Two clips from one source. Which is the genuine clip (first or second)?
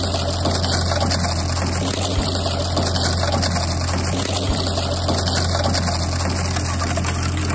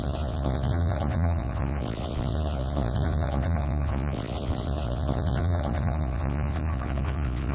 first